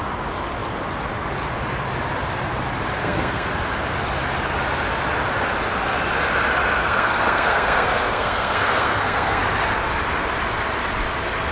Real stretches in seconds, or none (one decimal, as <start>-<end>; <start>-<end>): 0.0-3.0; 3.5-6.8; 9.4-11.5